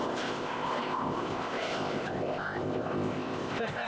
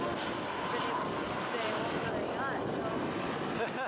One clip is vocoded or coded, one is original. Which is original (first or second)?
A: second